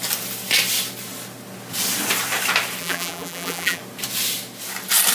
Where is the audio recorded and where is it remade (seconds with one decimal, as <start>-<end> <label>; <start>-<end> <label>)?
0.0-2.8 recorded; 2.8-3.8 remade; 3.8-5.1 recorded